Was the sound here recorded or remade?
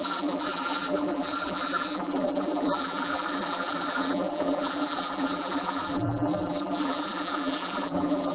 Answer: remade